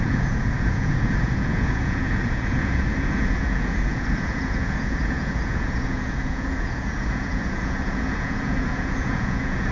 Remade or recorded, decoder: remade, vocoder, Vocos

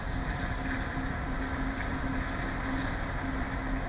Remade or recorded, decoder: recorded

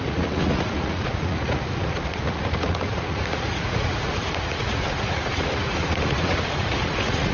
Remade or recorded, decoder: remade, vocoder, Vocos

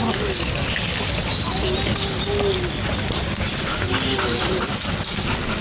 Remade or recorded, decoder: recorded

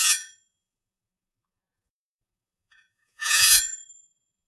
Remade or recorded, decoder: remade, vocoder, Vocos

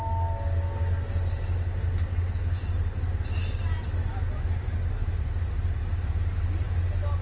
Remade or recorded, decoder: recorded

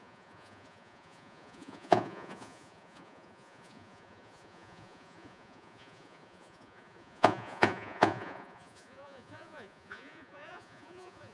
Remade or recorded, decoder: remade, vocoder, Vocos